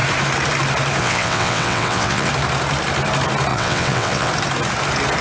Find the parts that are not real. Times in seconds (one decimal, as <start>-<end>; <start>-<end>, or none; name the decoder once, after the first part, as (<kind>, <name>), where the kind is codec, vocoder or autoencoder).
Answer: 1.0-2.3 (vocoder, WaveNeXt); 3.5-4.3